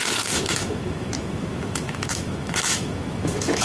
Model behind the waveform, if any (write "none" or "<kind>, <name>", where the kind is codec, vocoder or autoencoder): autoencoder, DAC-VAE